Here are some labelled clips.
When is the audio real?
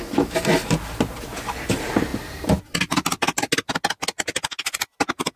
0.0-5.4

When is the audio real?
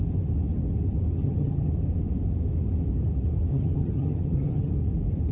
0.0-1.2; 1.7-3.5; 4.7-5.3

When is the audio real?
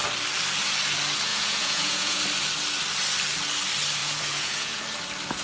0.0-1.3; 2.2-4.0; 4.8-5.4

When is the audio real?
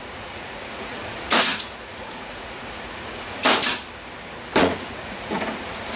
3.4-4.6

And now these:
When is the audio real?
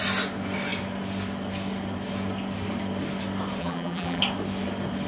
0.0-3.6; 4.2-5.1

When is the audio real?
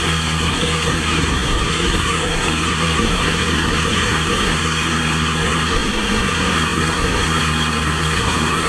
none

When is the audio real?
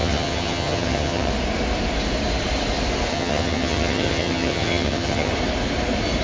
1.3-3.1; 5.3-6.2